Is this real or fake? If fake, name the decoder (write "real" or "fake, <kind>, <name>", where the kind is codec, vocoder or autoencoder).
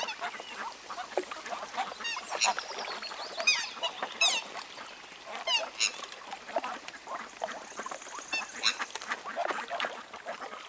real